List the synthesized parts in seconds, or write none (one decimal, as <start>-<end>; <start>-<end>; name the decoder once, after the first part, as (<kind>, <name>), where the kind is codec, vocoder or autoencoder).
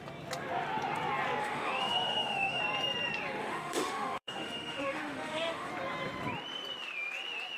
1.4-2.6 (autoencoder, DAC-VAE); 3.4-5.7